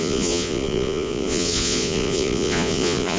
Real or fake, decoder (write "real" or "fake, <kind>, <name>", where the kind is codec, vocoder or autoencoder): fake, vocoder, Vocos